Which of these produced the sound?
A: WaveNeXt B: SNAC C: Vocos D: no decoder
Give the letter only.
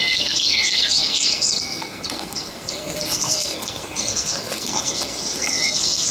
B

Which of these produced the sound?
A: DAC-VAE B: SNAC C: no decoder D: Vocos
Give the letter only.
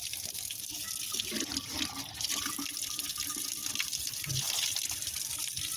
C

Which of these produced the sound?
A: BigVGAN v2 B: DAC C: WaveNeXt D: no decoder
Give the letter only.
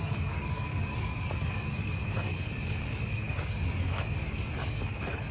B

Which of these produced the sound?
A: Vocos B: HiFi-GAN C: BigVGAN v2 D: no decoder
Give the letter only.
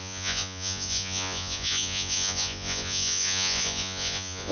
A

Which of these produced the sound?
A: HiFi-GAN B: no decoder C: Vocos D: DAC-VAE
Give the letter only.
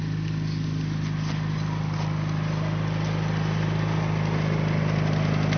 B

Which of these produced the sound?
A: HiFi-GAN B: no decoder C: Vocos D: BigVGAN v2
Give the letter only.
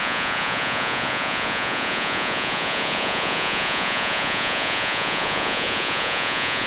C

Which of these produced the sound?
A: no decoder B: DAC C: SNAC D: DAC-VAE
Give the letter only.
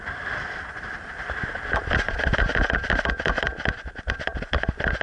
A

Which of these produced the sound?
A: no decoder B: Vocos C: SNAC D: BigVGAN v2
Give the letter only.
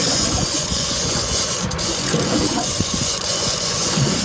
B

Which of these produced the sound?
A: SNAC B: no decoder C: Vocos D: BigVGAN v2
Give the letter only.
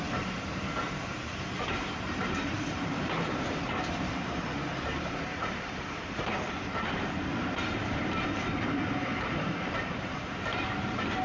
D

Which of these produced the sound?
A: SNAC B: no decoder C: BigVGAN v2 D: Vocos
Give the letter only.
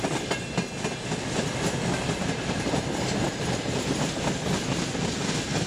B